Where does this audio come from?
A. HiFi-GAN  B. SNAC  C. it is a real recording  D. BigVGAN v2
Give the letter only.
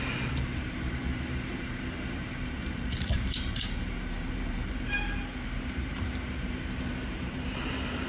D